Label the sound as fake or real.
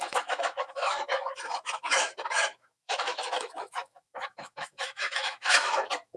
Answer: fake